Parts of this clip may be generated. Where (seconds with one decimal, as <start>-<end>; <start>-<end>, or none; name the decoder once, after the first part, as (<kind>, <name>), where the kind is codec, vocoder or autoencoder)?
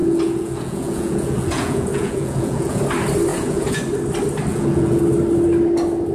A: 0.0-2.8 (vocoder, Vocos); 3.3-3.8; 4.5-5.0